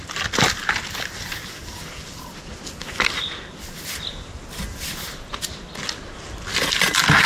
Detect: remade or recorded recorded